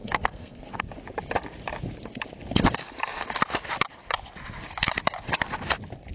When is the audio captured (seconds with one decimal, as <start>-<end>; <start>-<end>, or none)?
0.8-6.1